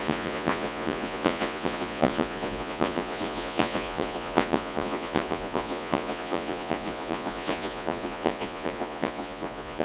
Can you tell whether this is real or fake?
fake